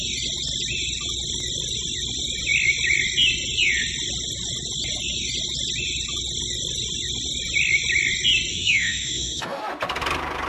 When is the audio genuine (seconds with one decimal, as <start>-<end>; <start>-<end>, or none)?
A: 0.0-8.5; 9.6-10.5